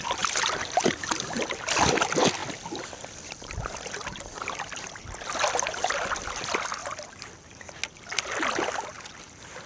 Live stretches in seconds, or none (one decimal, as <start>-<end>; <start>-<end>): 0.0-9.7